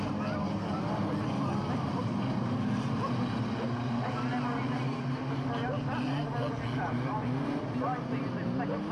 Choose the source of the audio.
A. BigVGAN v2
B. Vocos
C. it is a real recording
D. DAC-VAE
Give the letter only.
C